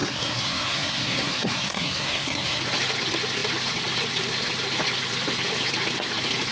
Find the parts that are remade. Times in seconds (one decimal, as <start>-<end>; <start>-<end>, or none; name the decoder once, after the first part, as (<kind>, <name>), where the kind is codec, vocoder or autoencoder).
0.0-2.6 (codec, SNAC)